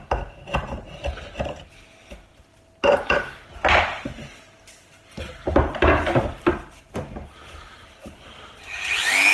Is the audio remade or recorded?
recorded